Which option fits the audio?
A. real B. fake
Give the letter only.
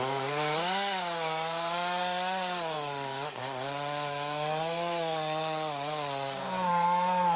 B